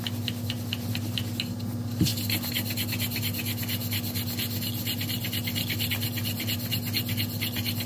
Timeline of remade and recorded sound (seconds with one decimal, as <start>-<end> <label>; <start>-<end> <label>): 0.0-7.9 recorded